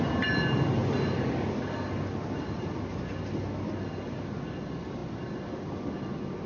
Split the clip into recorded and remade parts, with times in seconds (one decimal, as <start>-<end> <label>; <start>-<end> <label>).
0.0-6.5 recorded

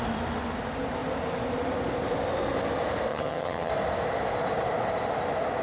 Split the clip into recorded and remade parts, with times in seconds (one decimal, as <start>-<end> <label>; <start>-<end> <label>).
0.0-3.1 recorded; 3.1-3.7 remade; 3.7-5.6 recorded

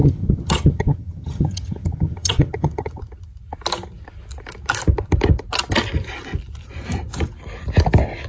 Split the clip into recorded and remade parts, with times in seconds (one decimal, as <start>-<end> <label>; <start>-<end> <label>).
0.0-3.0 remade; 3.0-8.3 recorded